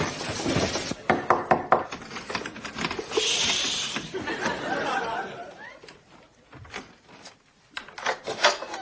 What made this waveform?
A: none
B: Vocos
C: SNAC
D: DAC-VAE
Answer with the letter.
A